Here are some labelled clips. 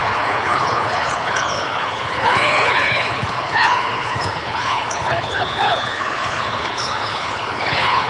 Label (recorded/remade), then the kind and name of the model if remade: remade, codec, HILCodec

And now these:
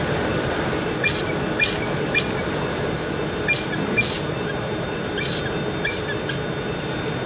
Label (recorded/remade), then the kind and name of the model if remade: recorded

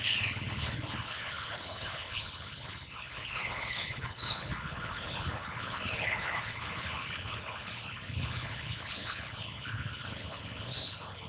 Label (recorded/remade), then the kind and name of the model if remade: remade, codec, HILCodec